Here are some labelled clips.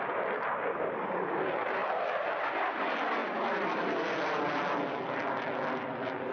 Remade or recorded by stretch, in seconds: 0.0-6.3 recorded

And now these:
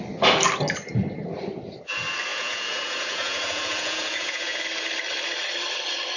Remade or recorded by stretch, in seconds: 0.0-2.3 recorded; 2.3-4.6 remade; 4.6-6.2 recorded

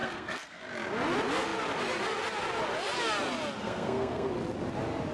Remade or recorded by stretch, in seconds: 0.0-0.6 remade; 0.6-3.6 recorded; 3.6-4.3 remade; 4.3-5.1 recorded

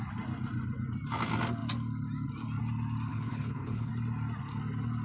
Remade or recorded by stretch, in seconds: 0.0-3.1 recorded; 3.1-3.9 remade; 3.9-5.0 recorded

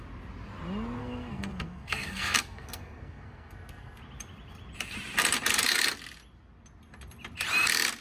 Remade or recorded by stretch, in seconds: 0.0-1.0 recorded; 1.0-4.0 remade; 4.0-8.0 recorded

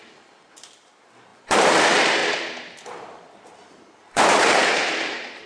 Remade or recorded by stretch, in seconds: 0.0-2.2 remade; 2.2-3.7 recorded; 3.7-5.5 remade

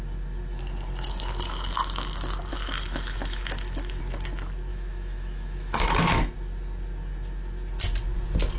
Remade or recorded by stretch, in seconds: 0.0-2.5 recorded; 2.5-4.0 remade; 4.0-4.7 recorded; 4.7-6.1 remade; 6.1-8.6 recorded